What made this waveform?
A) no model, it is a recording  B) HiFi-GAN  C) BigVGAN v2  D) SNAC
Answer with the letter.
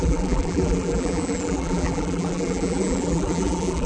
C